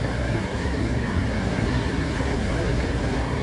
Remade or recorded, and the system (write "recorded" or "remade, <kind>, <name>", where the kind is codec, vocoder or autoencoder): remade, codec, SNAC